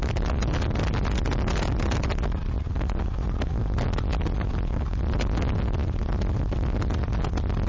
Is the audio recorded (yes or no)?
yes